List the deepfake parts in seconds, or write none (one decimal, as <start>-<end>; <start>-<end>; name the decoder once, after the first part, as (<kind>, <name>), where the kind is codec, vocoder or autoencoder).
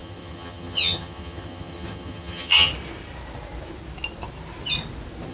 0.0-2.7 (vocoder, HiFi-GAN)